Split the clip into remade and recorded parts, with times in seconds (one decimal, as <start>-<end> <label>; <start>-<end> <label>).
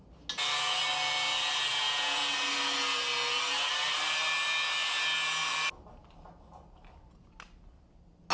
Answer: 0.0-1.7 recorded; 1.7-2.2 remade; 2.2-8.3 recorded